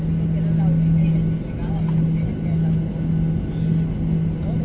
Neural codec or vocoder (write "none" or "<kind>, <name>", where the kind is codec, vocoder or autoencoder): none